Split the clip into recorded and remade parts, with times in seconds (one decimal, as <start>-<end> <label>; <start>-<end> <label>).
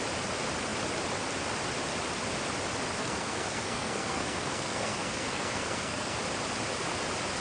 0.0-3.0 recorded; 3.0-6.2 remade; 6.2-7.4 recorded